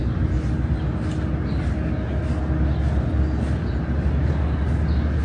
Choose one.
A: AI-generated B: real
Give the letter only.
B